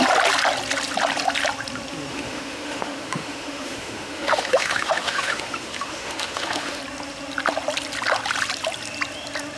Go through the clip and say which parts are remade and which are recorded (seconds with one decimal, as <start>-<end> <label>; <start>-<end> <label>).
0.0-2.1 recorded; 2.1-6.8 remade; 6.8-9.6 recorded